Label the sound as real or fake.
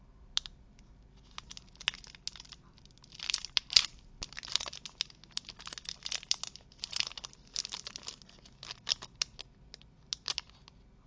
real